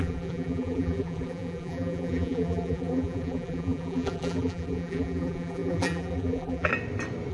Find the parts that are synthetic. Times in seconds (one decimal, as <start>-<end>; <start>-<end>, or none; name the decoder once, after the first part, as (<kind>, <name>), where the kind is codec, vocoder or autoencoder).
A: 0.0-6.7 (vocoder, BigVGAN v2)